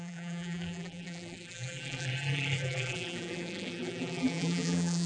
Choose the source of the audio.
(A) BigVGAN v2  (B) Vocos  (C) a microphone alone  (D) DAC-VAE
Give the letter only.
A